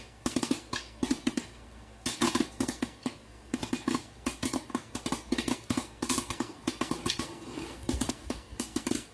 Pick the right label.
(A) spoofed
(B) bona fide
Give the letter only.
A